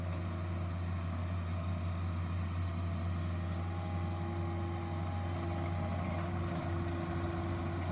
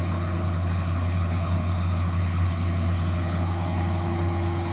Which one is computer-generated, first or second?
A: second